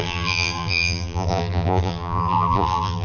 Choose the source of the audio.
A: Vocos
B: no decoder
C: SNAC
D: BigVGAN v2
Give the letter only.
D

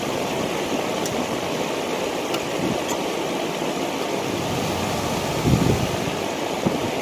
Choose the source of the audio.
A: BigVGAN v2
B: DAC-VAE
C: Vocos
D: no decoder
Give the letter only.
D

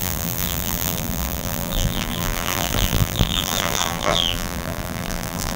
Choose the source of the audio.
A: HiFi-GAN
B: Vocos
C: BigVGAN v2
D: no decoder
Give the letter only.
C